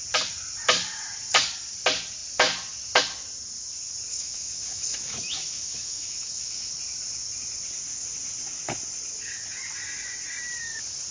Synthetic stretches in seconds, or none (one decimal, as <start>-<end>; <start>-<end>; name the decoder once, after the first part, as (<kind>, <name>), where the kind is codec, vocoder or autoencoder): 4.1-6.7 (autoencoder, DAC-VAE)